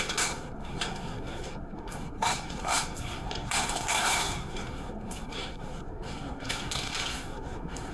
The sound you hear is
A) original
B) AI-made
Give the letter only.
B